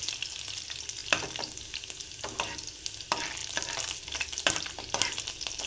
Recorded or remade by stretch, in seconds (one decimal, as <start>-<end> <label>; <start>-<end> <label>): 0.0-5.7 recorded